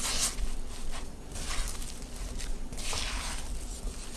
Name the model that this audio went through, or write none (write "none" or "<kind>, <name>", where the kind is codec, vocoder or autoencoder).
none